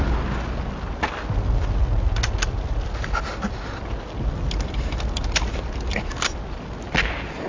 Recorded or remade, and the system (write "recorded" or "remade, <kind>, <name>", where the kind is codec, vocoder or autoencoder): recorded